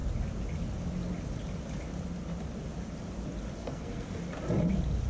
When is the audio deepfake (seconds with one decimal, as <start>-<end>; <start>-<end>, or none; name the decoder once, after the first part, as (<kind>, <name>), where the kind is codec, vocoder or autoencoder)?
3.6-4.2 (codec, SNAC)